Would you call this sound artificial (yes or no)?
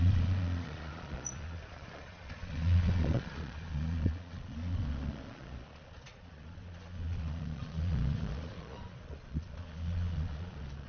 yes